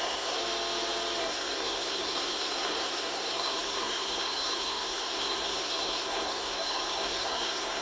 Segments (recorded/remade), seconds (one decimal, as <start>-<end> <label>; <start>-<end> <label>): 0.0-0.4 remade; 0.4-1.2 recorded; 1.2-7.8 remade